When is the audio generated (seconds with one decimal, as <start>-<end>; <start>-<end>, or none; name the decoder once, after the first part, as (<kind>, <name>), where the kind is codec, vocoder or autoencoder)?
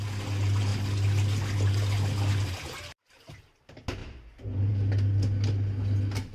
none